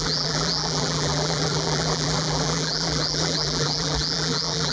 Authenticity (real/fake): fake